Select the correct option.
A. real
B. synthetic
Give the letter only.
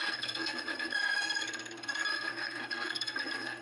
B